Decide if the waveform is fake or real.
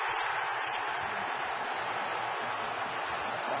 real